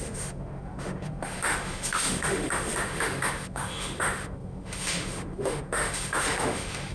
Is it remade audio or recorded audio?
remade